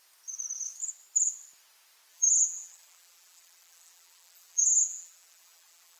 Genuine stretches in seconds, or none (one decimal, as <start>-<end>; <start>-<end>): 0.0-2.1